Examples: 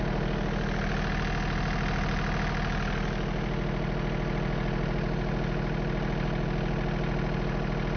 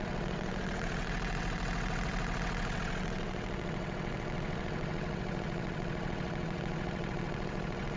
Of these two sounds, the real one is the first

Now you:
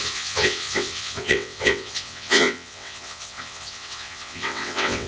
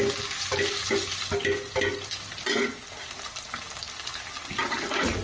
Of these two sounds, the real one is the second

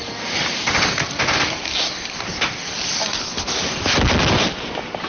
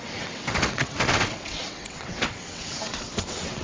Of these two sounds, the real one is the first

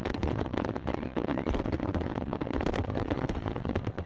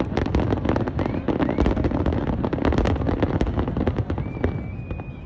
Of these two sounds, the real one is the second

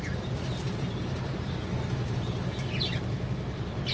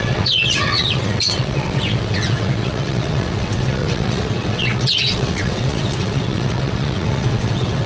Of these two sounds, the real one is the first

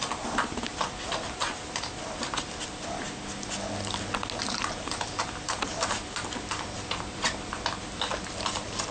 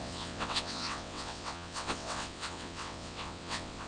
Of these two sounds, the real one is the first